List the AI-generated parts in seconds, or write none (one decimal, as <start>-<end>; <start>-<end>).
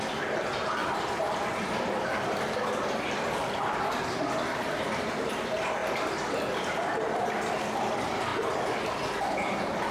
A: 0.8-4.9; 5.8-6.3; 8.3-9.0